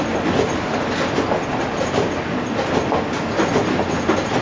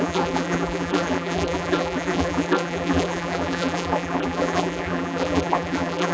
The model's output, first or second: second